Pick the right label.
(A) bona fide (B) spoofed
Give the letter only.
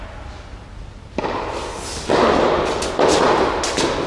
A